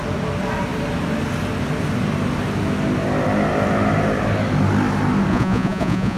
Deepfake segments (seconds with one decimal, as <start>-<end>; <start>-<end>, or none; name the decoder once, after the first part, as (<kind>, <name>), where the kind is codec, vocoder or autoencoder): 5.3-6.2 (vocoder, Vocos)